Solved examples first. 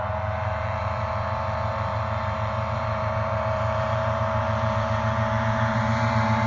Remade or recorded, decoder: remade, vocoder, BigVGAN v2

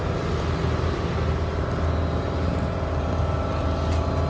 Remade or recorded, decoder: recorded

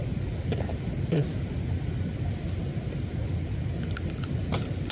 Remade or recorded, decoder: recorded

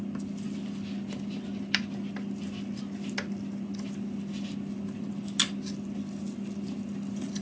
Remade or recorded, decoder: recorded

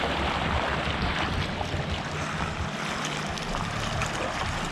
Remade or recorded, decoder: recorded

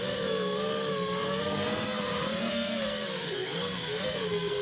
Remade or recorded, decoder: remade, codec, SNAC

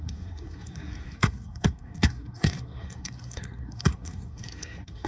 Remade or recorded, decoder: remade, codec, SNAC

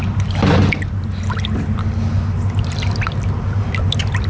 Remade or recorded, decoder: recorded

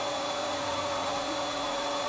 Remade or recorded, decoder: remade, vocoder, Vocos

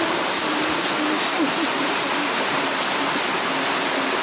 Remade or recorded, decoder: recorded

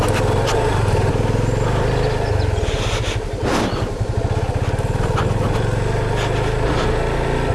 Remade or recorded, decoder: recorded